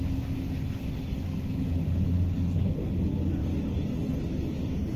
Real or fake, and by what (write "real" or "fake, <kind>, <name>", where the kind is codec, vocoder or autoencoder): real